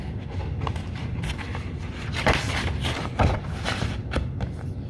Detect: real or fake fake